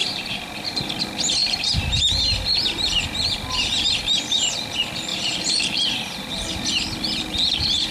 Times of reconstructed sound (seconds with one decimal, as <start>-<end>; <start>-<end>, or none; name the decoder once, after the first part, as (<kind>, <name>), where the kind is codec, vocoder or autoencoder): 0.0-0.9 (vocoder, BigVGAN v2); 1.4-2.0; 5.1-6.3